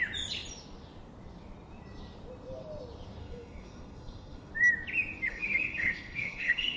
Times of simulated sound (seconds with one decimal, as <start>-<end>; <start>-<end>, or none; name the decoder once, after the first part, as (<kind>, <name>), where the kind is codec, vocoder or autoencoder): 3.2-4.5 (codec, SNAC); 5.3-6.8